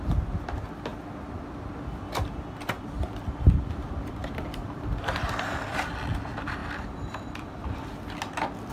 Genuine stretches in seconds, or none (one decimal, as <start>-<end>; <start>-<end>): 0.0-0.9; 1.4-8.7

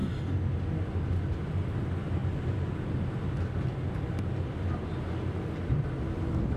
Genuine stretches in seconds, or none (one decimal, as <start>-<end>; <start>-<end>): 0.0-6.6

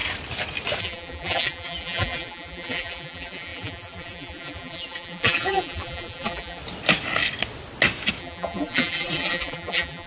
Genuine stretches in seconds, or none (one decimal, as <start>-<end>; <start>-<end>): 0.0-0.8; 6.6-8.2